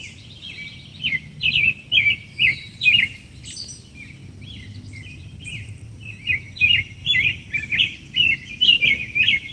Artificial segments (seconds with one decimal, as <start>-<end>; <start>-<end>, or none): 0.0-7.0; 7.8-9.5